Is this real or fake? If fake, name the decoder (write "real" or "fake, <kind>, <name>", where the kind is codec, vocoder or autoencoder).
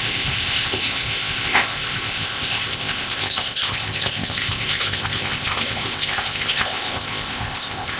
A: fake, codec, ZipCodec